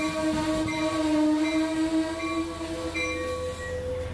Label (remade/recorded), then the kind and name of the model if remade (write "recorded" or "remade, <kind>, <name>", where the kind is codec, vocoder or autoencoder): recorded